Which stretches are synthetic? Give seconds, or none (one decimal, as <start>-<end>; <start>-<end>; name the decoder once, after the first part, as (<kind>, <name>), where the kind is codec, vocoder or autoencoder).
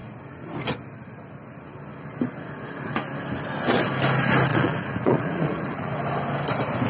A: 4.5-6.0 (vocoder, Vocos)